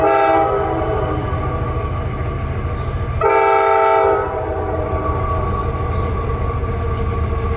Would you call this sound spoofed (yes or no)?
no